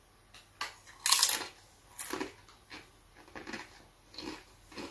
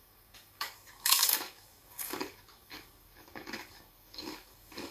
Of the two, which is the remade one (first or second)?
second